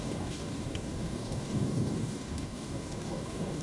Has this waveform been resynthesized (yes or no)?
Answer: yes